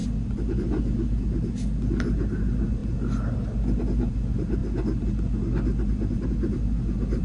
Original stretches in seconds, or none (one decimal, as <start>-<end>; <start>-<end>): 0.0-7.2